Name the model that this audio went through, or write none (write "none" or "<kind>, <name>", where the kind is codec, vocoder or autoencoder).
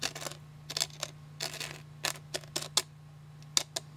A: none